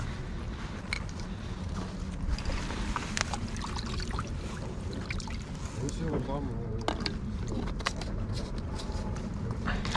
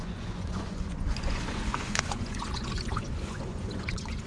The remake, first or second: second